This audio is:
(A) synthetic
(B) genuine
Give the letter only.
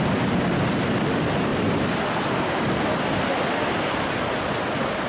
B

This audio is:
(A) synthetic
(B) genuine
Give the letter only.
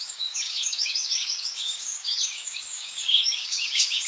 A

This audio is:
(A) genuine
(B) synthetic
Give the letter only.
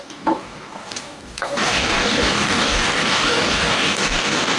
B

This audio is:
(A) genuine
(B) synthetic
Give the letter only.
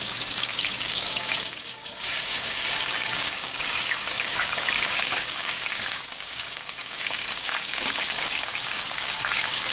B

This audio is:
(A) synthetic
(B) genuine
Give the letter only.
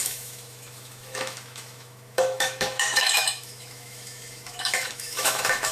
A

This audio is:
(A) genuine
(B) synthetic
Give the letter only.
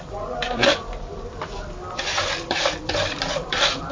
B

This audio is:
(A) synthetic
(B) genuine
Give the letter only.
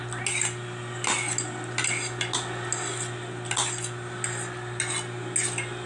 B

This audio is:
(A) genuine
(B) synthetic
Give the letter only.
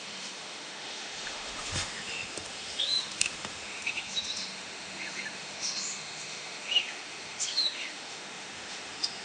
B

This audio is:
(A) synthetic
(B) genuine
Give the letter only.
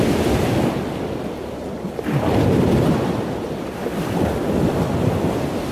B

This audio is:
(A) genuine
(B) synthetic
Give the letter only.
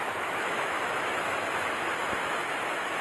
B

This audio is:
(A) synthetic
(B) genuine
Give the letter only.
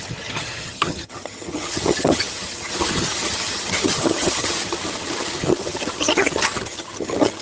A